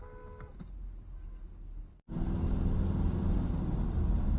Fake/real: real